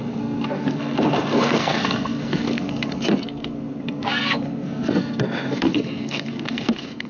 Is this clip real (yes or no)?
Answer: no